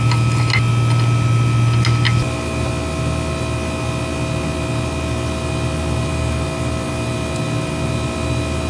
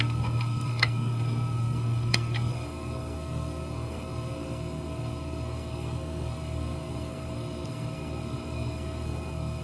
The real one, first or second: first